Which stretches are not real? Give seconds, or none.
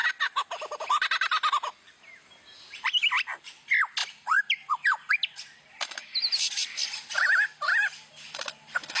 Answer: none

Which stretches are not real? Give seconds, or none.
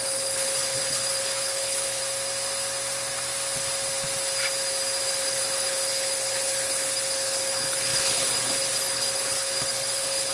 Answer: 0.0-2.0; 5.0-10.3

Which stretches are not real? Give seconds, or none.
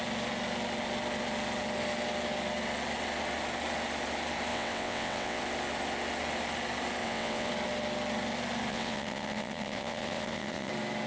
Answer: 4.5-5.4; 7.0-7.5; 8.7-10.7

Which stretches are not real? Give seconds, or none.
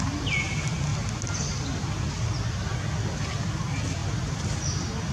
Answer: none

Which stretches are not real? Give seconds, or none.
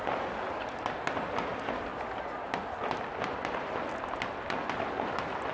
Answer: none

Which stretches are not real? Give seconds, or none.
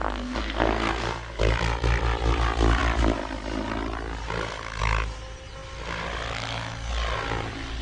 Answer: 0.0-1.4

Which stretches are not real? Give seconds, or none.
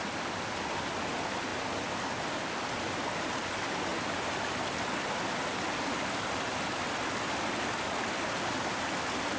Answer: none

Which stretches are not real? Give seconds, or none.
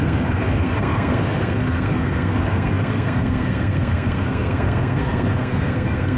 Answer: 0.0-6.2